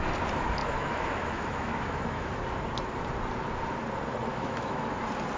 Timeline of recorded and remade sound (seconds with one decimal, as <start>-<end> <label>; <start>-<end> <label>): 0.0-0.6 recorded; 0.6-2.4 remade; 2.4-4.3 recorded; 4.3-4.8 remade; 4.8-5.4 recorded